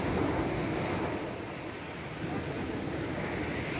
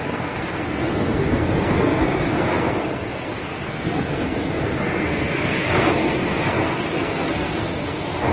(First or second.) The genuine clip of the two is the first